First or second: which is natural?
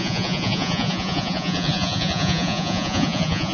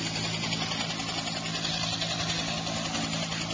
second